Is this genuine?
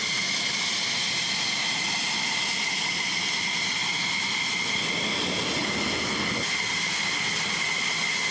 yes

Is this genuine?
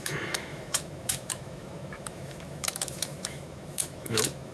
no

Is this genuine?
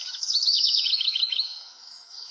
no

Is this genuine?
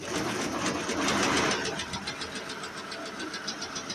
yes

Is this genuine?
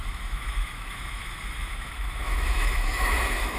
no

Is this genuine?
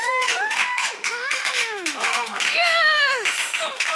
no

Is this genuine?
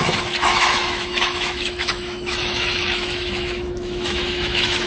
no